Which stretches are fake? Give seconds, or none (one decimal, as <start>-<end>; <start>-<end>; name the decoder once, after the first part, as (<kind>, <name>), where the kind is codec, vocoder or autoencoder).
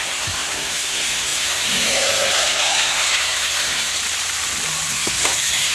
0.0-4.0 (codec, SNAC); 4.9-5.7